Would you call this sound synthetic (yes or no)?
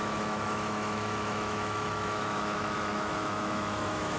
yes